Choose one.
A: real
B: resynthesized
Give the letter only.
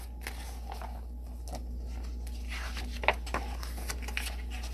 A